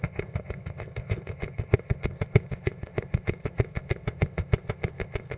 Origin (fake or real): fake